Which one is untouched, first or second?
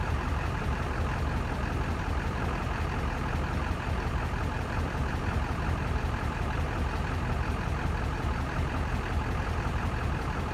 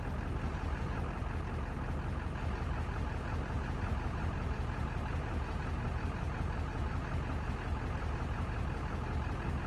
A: second